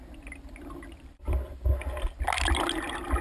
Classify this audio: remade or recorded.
recorded